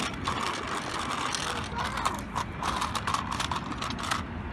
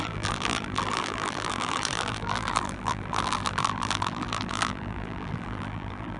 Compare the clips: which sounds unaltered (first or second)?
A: first